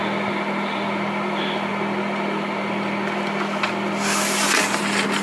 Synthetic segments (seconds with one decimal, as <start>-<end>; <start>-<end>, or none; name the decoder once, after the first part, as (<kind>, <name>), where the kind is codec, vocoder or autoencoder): none